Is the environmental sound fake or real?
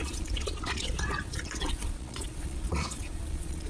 fake